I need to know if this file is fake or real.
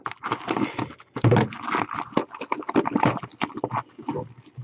real